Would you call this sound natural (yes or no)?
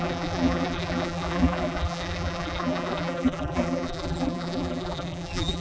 no